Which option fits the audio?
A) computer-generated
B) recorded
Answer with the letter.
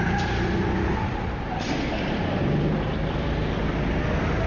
B